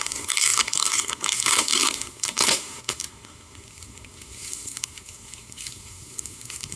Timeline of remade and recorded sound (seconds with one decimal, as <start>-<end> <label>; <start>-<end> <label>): 0.0-6.8 remade